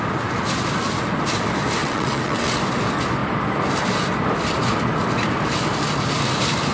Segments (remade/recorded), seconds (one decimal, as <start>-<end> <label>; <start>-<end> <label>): 0.0-1.8 recorded; 1.8-2.6 remade; 2.6-6.7 recorded